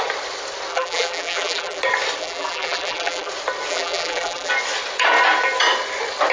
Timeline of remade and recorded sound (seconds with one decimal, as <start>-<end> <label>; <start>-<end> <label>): 0.0-0.7 recorded; 0.7-1.8 remade; 1.8-2.2 recorded; 2.2-3.3 remade; 3.3-3.7 recorded; 3.7-4.5 remade; 4.5-6.3 recorded

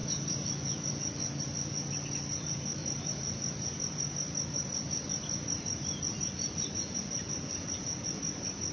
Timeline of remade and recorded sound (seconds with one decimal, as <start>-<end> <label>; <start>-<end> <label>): 0.0-2.8 recorded; 2.8-7.0 remade; 7.0-8.7 recorded

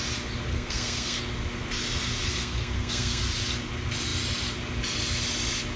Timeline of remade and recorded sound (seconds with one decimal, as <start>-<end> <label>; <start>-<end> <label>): 0.0-0.5 recorded; 0.5-1.2 remade; 1.2-2.3 recorded; 2.3-3.2 remade; 3.2-5.8 recorded

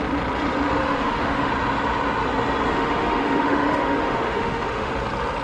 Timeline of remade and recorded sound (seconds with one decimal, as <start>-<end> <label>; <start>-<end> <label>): 0.0-0.8 recorded; 0.8-1.5 remade; 1.5-2.7 recorded; 2.7-4.9 remade; 4.9-5.4 recorded

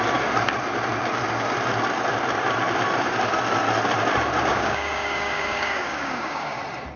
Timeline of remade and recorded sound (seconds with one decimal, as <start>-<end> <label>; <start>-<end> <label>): 0.0-4.5 recorded; 4.5-6.6 remade; 6.6-7.0 recorded

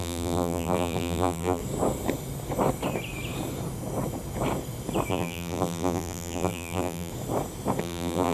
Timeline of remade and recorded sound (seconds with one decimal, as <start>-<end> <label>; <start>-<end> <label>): 0.0-1.6 remade; 1.6-5.1 recorded; 5.1-7.1 remade; 7.1-7.8 recorded; 7.8-8.3 remade

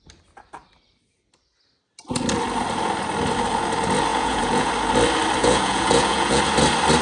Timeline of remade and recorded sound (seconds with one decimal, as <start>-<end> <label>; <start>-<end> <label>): 0.0-4.1 recorded; 4.1-4.7 remade; 4.7-5.4 recorded; 5.4-6.4 remade; 6.4-7.0 recorded